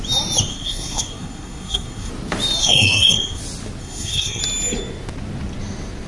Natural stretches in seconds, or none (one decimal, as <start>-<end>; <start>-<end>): 0.0-0.5; 2.1-2.6; 3.4-3.8; 4.4-6.1